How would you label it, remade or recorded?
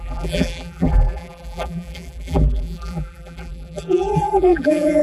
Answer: remade